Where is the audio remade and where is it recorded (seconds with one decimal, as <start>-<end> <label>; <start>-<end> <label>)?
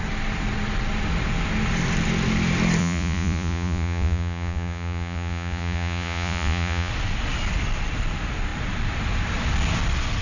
0.0-2.8 recorded; 2.8-6.9 remade; 6.9-10.2 recorded